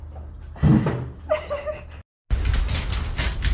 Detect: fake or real real